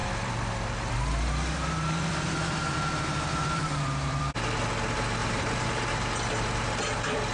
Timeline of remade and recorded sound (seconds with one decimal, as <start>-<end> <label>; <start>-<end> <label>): 0.0-4.2 remade; 4.2-5.2 recorded; 5.2-6.3 remade; 6.3-7.3 recorded